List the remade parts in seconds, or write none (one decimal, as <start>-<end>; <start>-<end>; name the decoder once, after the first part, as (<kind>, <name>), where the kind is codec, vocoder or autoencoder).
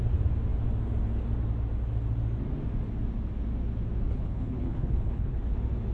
4.1-5.5 (codec, HILCodec)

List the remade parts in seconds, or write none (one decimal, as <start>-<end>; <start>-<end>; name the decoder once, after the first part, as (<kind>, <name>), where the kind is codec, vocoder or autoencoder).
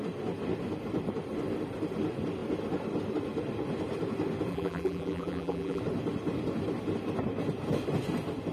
4.5-5.8 (vocoder, BigVGAN v2)